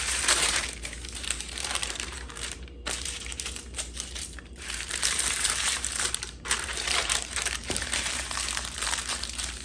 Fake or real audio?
fake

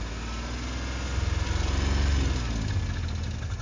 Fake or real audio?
real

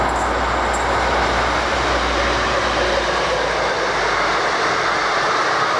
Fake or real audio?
real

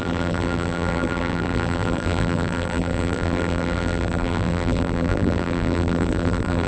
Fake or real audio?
fake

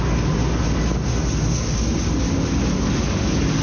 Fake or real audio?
real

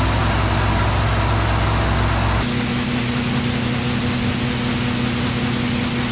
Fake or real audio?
real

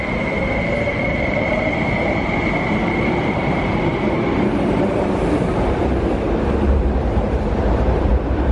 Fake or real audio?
fake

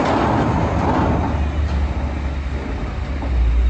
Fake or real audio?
real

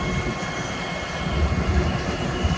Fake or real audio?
real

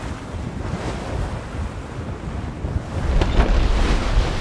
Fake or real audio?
real